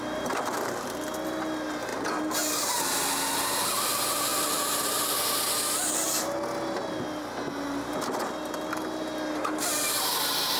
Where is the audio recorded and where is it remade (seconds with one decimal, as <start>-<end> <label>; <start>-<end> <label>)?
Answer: 0.0-10.6 recorded